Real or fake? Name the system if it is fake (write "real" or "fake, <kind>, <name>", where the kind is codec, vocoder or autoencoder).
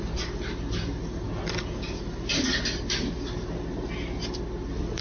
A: real